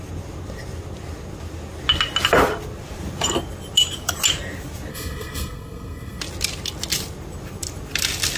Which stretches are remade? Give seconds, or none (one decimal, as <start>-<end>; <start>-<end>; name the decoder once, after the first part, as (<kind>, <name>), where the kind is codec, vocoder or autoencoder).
4.9-6.2 (codec, SNAC)